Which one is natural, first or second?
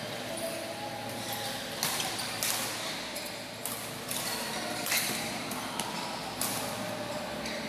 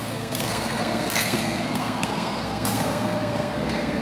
first